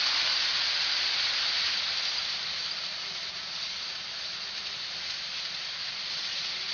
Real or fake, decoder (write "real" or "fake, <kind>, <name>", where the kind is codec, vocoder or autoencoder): real